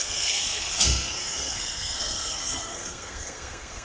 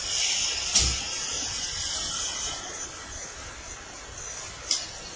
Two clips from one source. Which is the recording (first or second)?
second